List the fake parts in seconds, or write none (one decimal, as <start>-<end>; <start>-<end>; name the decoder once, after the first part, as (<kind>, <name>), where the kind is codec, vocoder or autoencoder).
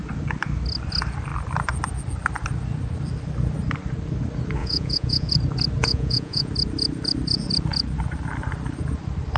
4.6-5.3 (vocoder, Vocos); 5.8-6.5